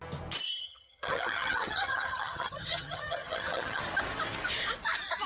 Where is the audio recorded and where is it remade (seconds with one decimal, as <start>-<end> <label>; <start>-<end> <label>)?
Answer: 0.0-0.6 recorded; 0.6-3.8 remade; 3.8-5.3 recorded